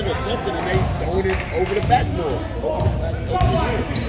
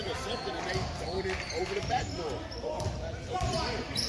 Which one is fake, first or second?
second